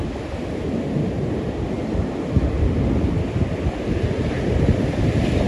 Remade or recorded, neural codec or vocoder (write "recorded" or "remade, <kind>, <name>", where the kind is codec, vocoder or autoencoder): recorded